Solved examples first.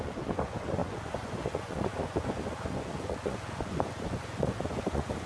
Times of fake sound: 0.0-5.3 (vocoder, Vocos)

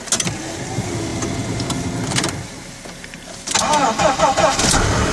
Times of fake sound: none

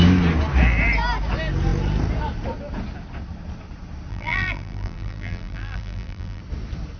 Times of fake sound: 4.1-6.4 (vocoder, BigVGAN v2)

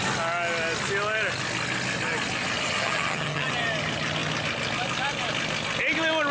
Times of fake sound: 2.8-3.5 (vocoder, HiFi-GAN)

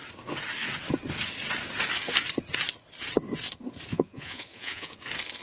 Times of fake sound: 3.9-5.0 (vocoder, Vocos)

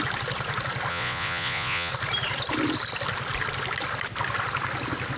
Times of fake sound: 0.9-1.9 (vocoder, Vocos)

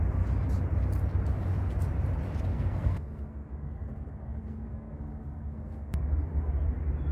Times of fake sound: 2.5-6.1 (codec, SNAC)